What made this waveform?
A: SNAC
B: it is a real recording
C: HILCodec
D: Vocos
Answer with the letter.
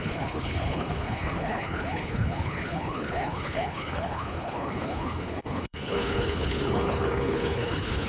C